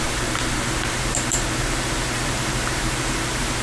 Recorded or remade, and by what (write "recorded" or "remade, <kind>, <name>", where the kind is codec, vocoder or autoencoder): remade, vocoder, BigVGAN v2